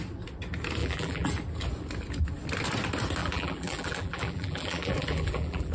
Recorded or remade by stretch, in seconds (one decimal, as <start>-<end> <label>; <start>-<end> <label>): 0.0-0.8 recorded; 0.8-1.3 remade; 1.3-3.2 recorded; 3.2-5.7 remade